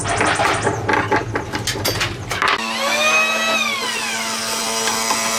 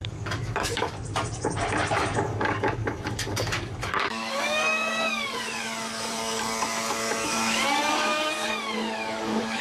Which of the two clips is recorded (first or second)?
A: first